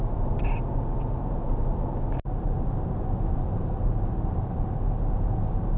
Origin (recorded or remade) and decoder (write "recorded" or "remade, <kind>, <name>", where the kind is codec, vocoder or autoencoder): recorded